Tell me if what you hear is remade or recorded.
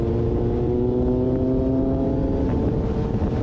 recorded